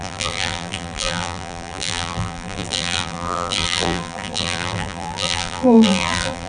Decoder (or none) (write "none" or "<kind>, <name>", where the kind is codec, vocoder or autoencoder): vocoder, BigVGAN v2